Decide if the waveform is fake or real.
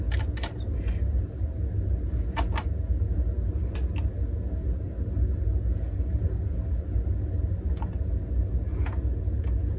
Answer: real